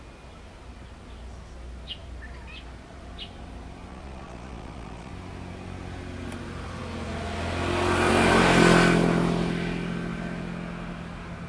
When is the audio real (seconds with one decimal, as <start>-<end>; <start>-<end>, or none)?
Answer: 0.0-3.9; 5.1-11.5